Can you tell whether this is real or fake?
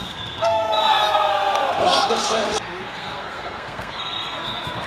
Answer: fake